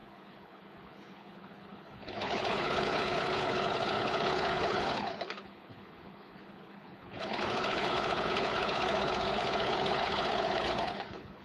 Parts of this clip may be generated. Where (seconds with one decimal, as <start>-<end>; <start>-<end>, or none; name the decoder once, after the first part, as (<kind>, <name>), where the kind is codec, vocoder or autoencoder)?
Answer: 0.0-11.4 (codec, HILCodec)